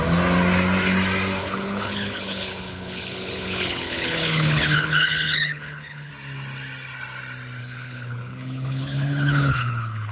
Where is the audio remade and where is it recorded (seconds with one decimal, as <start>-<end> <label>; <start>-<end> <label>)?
0.0-1.4 recorded; 1.4-6.1 remade; 6.1-7.6 recorded; 7.6-10.1 remade